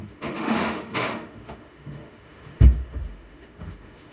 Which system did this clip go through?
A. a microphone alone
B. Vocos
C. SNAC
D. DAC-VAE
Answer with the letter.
D